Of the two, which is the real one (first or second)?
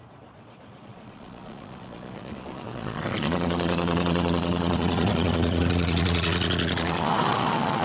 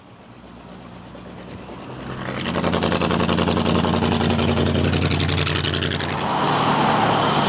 second